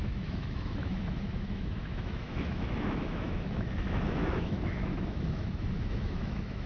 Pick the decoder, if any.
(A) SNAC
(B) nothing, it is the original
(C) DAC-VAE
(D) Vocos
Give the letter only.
C